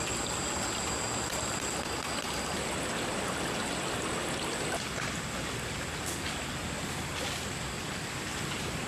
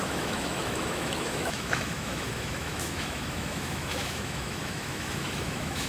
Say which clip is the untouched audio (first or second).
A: first